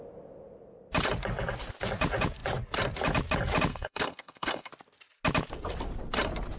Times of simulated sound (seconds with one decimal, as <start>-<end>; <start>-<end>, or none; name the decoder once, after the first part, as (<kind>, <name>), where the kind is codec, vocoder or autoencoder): 3.7-4.7 (codec, SNAC)